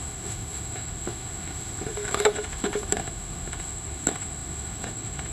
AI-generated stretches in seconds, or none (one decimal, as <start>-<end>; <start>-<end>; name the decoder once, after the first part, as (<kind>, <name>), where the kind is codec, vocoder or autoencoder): 0.0-5.3 (autoencoder, DAC-VAE)